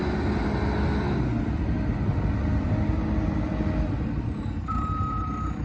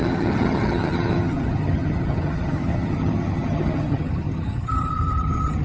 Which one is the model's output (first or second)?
second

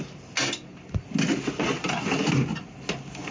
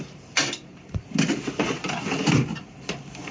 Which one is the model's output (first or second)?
second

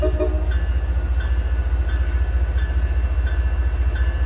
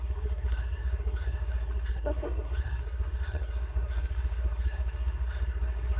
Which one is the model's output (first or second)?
second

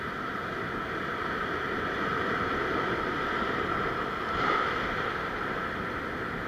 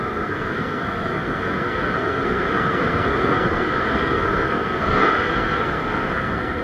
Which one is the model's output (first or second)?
second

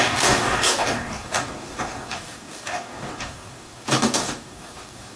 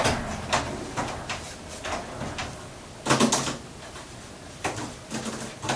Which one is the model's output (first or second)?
first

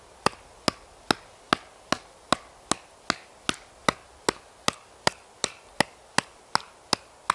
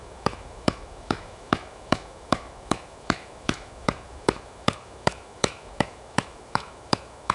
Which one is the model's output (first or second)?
second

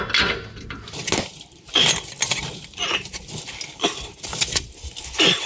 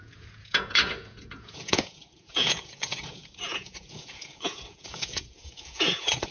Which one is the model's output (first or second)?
second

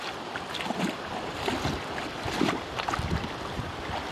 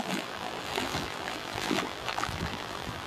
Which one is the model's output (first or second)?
second